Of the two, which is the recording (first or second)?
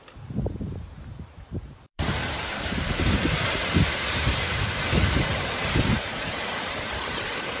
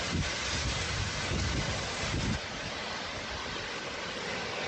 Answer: second